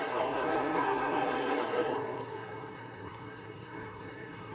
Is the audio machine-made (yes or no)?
yes